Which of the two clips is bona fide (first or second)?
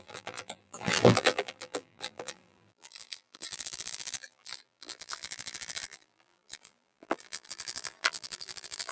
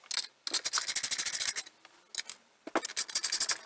second